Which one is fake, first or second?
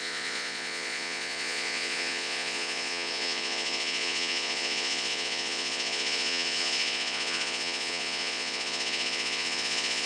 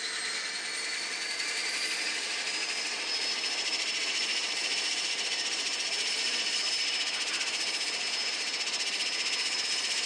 first